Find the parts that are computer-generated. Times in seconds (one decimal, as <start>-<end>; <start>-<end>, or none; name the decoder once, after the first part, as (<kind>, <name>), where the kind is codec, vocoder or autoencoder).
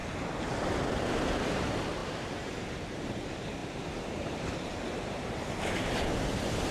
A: 0.9-6.7 (vocoder, BigVGAN v2)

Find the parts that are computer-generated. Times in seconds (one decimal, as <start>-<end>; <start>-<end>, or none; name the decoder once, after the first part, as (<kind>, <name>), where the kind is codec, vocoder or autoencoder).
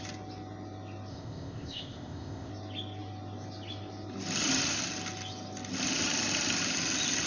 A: 1.1-2.5 (codec, ZipCodec)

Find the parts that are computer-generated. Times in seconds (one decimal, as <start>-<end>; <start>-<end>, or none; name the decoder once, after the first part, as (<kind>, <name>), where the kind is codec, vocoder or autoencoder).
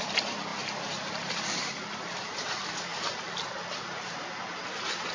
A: 0.0-2.9 (vocoder, BigVGAN v2); 3.8-5.1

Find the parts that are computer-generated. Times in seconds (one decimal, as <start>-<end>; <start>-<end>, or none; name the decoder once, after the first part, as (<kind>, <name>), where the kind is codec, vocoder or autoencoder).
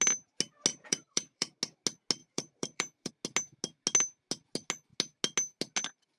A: 0.7-1.6 (vocoder, BigVGAN v2); 2.2-3.1